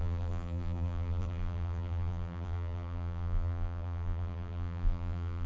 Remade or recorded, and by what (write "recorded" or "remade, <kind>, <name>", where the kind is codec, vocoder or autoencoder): remade, vocoder, BigVGAN v2